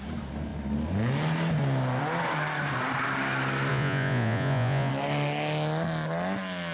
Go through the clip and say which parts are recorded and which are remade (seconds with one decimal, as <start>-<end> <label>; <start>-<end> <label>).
0.0-3.7 recorded; 3.7-4.9 remade; 4.9-6.7 recorded